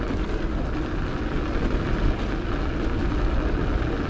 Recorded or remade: recorded